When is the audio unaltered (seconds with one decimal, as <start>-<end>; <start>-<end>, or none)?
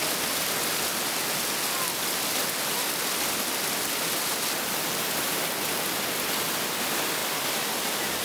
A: 0.0-8.2